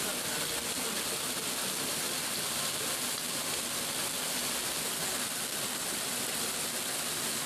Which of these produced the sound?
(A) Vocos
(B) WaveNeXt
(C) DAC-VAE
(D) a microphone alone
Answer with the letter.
D